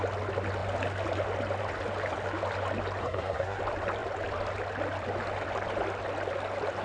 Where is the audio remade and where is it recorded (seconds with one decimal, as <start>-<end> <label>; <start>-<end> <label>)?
0.0-3.0 recorded; 3.0-3.6 remade; 3.6-6.8 recorded